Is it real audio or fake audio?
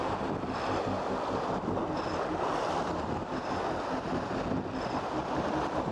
real